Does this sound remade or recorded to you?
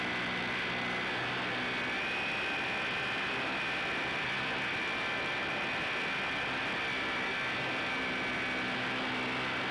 recorded